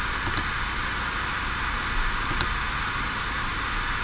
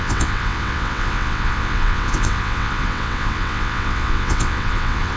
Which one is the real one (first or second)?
first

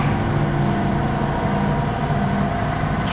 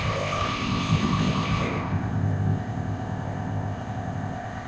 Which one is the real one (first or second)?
first